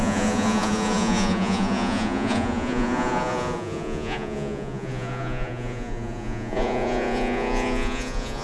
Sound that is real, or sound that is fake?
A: fake